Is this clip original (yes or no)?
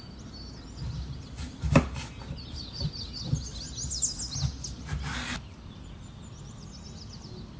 yes